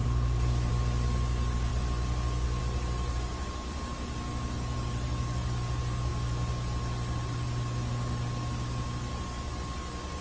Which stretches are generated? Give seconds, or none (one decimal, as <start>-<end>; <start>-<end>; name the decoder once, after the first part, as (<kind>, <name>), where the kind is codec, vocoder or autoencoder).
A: 0.0-0.7 (vocoder, BigVGAN v2)